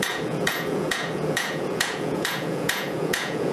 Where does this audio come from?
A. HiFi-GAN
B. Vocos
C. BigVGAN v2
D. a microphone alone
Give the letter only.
B